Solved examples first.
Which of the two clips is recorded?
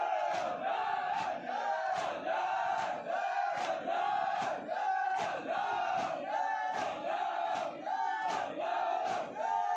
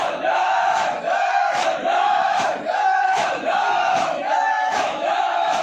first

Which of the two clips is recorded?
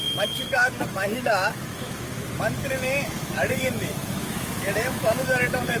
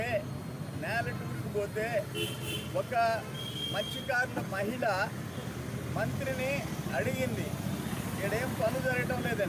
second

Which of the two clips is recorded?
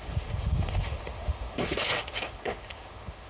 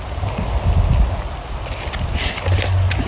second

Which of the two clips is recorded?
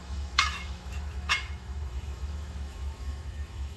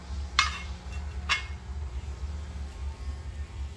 second